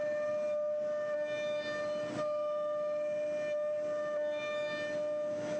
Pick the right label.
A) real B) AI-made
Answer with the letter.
A